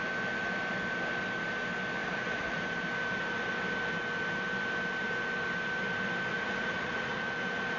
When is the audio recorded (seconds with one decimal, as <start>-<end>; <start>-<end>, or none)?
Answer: 0.0-2.0; 2.6-6.3; 7.2-7.8